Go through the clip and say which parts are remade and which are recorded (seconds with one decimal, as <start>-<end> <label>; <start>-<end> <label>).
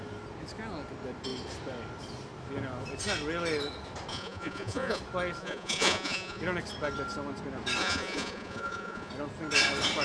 0.0-4.1 recorded; 4.1-5.0 remade; 5.0-5.4 recorded; 5.4-6.4 remade; 6.4-7.8 recorded; 7.8-9.1 remade; 9.1-10.0 recorded